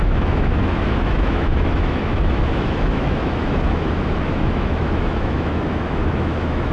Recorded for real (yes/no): no